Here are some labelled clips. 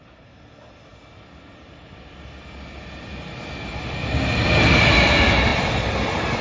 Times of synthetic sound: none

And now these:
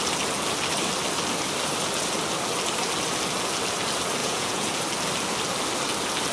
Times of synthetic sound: 4.2-4.8 (vocoder, Vocos)

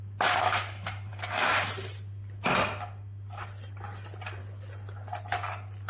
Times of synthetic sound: none

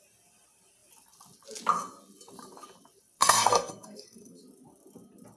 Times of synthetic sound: 3.2-4.4 (codec, SNAC)